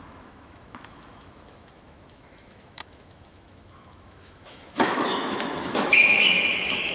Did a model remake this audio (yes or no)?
yes